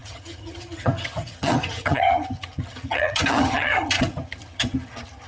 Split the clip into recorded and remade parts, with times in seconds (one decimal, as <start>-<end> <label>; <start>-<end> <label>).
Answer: 0.0-5.3 remade